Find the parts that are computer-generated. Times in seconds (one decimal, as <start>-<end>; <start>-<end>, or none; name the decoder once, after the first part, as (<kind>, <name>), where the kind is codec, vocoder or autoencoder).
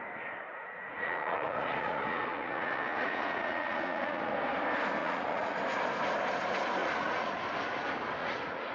0.5-4.3 (vocoder, Vocos); 5.0-5.6; 6.8-7.4; 8.2-8.7